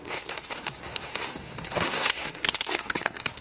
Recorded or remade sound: remade